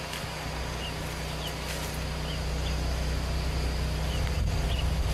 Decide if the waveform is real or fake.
real